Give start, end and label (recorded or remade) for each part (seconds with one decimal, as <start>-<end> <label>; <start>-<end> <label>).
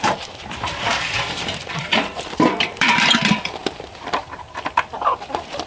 0.0-5.7 remade